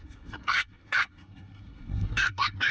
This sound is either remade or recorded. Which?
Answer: remade